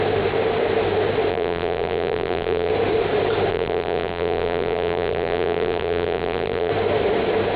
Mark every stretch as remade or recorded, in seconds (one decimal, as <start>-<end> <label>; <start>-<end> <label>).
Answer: 0.0-1.3 recorded; 1.3-2.7 remade; 2.7-3.5 recorded; 3.5-6.7 remade; 6.7-7.6 recorded